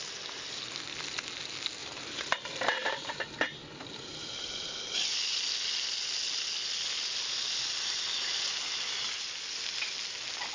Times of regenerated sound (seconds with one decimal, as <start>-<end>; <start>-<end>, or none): 1.8-3.2